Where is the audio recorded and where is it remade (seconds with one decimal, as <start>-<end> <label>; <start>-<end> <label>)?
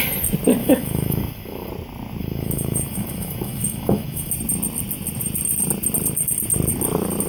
0.0-0.6 recorded; 0.6-1.7 remade; 1.7-2.2 recorded; 2.2-4.3 remade; 4.3-7.3 recorded